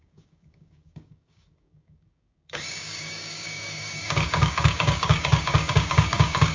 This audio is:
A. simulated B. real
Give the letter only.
A